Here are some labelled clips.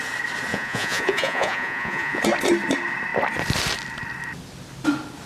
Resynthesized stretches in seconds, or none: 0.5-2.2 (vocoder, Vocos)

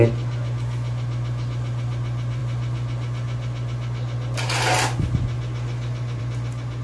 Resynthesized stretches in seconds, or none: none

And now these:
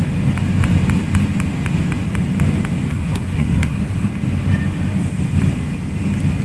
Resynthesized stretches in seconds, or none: 2.9-4.1 (codec, SNAC)

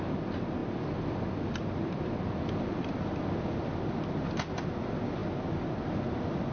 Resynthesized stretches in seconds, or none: none

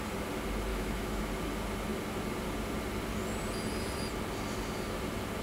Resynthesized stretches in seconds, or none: 0.7-1.3 (autoencoder, DAC-VAE)